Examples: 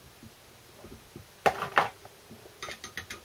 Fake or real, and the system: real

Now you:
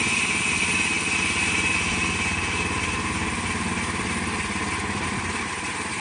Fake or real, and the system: real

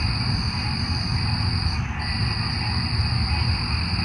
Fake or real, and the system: fake, vocoder, BigVGAN v2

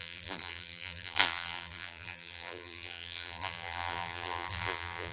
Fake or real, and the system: fake, vocoder, BigVGAN v2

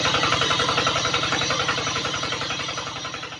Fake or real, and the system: fake, vocoder, BigVGAN v2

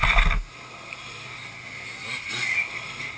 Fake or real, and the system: real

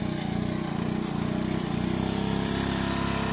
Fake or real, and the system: fake, vocoder, BigVGAN v2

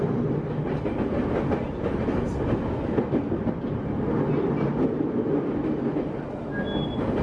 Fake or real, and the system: real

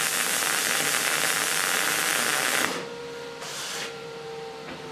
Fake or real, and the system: fake, vocoder, BigVGAN v2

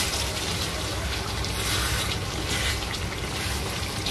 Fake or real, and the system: real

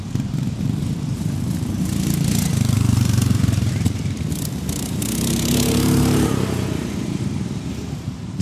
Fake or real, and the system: fake, vocoder, BigVGAN v2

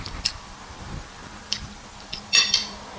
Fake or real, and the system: fake, vocoder, BigVGAN v2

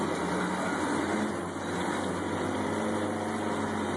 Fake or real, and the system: real